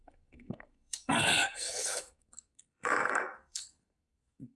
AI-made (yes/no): yes